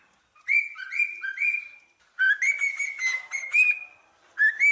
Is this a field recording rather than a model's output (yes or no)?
yes